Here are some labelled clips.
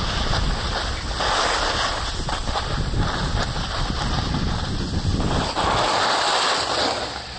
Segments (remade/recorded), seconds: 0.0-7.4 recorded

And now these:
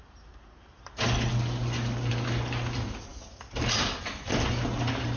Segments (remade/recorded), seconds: 0.0-5.2 recorded

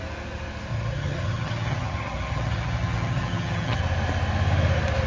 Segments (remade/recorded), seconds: 0.0-0.7 recorded; 0.7-3.8 remade; 3.8-5.1 recorded

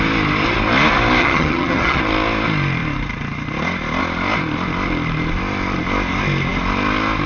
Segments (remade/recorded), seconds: 0.0-1.2 recorded; 1.2-2.0 remade; 2.0-7.3 recorded

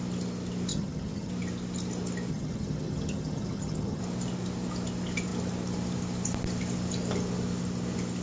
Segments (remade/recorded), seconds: 0.0-0.7 recorded; 0.7-1.3 remade; 1.3-2.3 recorded; 2.3-4.0 remade; 4.0-8.2 recorded